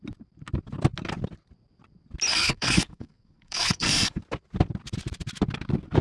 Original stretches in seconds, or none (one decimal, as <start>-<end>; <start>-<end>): 0.0-2.3; 4.2-6.0

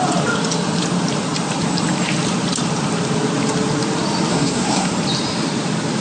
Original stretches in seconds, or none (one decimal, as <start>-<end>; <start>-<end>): 0.0-4.3; 4.9-6.0